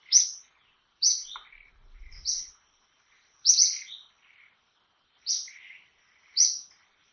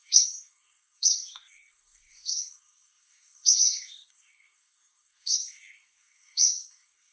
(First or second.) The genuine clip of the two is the first